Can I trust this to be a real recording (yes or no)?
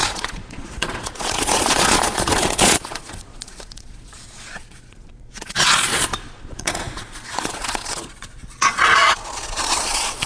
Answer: no